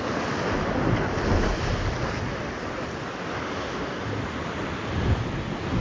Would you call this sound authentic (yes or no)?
yes